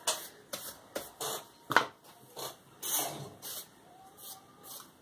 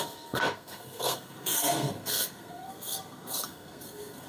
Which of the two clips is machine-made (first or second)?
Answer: second